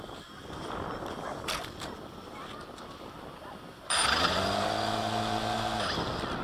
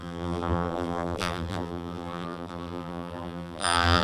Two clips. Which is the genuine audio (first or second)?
first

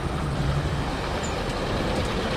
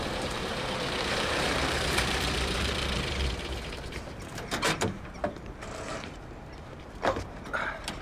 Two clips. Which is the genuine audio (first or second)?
first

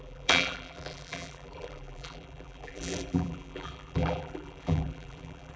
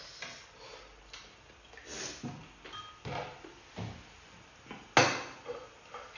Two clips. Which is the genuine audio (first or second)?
second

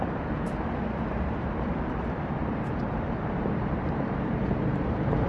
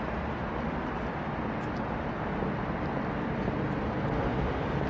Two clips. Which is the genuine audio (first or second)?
second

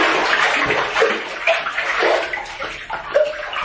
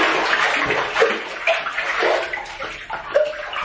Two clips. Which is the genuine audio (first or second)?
second